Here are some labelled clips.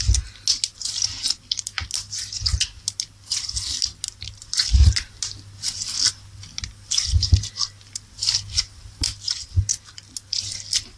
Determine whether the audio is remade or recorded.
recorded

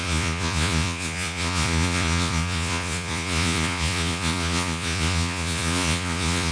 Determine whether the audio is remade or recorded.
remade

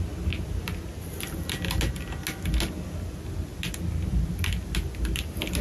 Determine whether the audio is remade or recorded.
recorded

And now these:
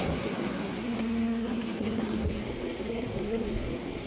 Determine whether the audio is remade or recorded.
remade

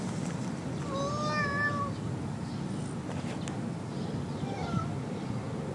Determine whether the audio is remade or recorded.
recorded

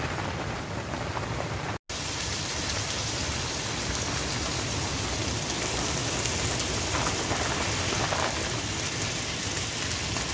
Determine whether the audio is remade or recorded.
recorded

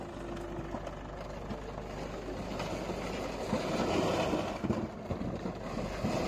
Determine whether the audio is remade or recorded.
recorded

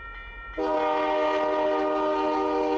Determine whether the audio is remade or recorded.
recorded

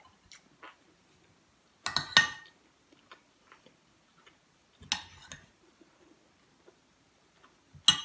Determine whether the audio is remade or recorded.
recorded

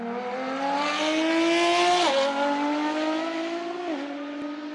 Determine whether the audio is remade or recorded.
recorded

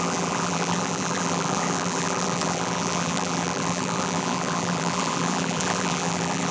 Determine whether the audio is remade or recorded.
remade